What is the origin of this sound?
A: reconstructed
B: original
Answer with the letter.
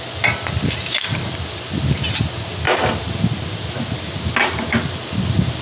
B